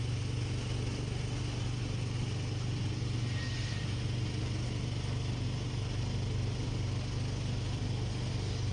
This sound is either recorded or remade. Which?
recorded